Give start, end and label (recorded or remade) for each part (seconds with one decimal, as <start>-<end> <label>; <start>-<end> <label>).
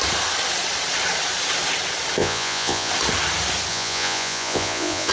0.0-2.2 recorded; 2.2-2.9 remade; 2.9-3.7 recorded; 3.7-5.1 remade